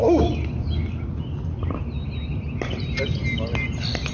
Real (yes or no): yes